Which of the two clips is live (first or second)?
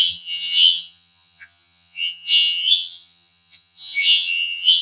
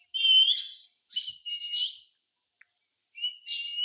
second